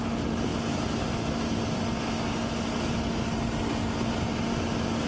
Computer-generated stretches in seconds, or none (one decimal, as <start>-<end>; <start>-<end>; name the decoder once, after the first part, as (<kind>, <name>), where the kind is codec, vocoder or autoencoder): none